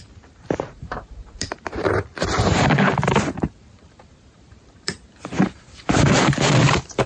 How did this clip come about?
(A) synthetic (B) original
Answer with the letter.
A